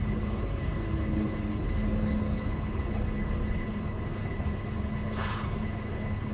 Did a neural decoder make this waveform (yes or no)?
yes